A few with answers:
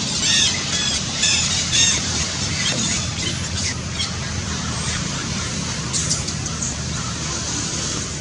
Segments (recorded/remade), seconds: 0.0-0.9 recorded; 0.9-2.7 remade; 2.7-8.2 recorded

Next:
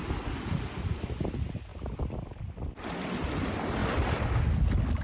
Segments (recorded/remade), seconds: 0.0-3.8 recorded; 3.8-4.4 remade; 4.4-5.0 recorded

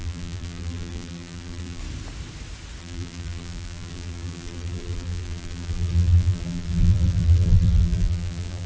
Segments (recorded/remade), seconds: 0.0-1.8 remade; 1.8-2.8 recorded; 2.8-8.7 remade

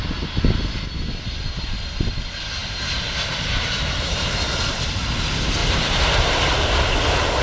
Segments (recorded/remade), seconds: 0.0-2.6 recorded; 2.6-5.0 remade; 5.0-5.6 recorded; 5.6-6.8 remade; 6.8-7.4 recorded